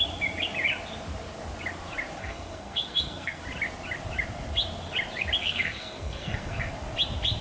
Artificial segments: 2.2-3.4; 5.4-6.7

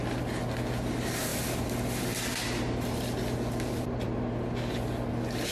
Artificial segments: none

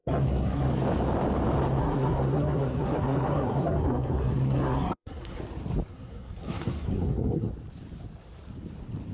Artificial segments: 0.0-0.7; 1.8-5.4; 5.9-7.5

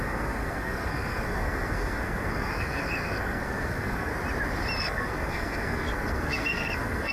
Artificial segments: 0.0-4.1; 4.8-7.1

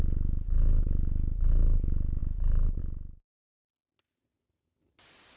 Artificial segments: none